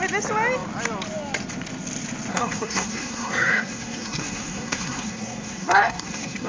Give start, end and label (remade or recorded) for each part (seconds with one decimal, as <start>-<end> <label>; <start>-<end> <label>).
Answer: 0.0-2.3 recorded; 2.3-6.5 remade